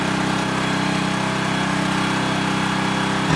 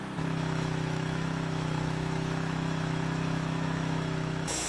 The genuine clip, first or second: first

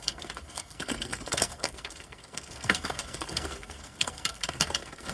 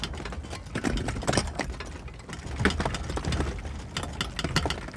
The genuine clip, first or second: second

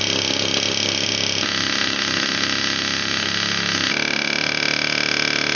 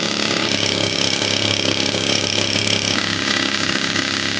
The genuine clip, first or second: first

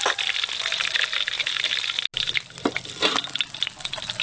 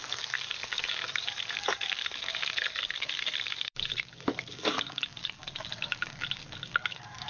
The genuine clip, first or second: first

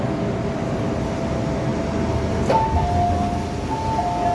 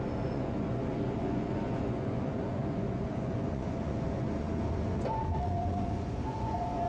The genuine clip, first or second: first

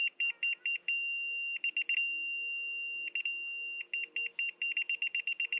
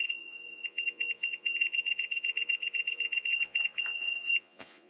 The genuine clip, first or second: first